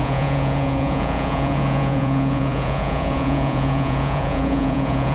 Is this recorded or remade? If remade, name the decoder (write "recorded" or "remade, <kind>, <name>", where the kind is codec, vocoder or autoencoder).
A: remade, vocoder, Vocos